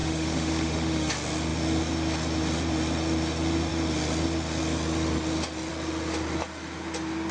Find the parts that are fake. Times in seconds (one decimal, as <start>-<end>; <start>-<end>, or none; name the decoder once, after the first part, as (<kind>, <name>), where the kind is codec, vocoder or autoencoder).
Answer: 0.0-1.1 (autoencoder, DAC-VAE)